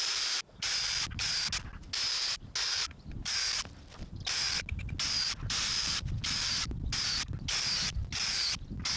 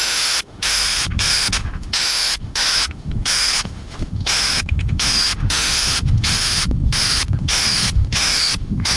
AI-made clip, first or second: second